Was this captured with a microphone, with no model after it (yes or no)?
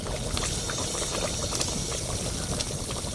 yes